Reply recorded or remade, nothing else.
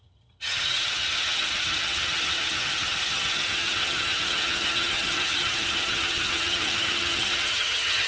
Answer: remade